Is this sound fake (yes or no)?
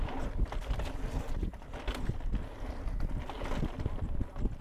no